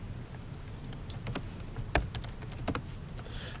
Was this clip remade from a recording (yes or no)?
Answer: no